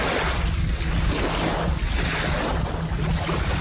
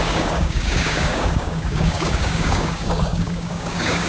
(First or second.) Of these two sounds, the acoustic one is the first